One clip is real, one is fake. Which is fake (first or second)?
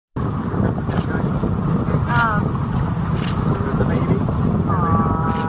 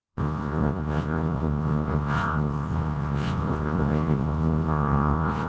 second